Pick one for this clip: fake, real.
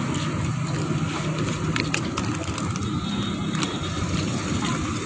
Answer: real